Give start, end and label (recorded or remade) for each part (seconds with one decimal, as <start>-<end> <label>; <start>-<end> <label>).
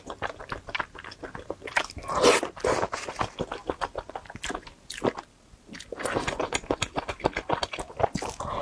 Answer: 0.0-8.6 recorded